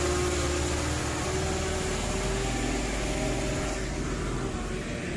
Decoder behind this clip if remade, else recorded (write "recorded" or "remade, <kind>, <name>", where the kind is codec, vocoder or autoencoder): recorded